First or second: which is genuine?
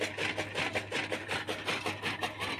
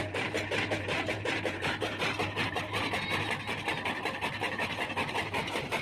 first